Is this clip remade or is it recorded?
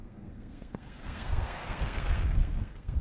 remade